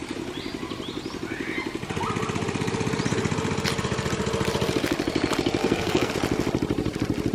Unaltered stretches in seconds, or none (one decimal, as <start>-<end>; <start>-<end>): 0.0-5.6; 6.1-7.3